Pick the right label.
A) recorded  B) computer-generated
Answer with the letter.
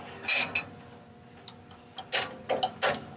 A